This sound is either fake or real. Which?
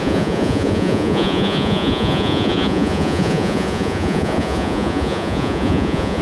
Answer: fake